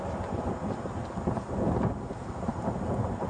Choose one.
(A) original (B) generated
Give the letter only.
A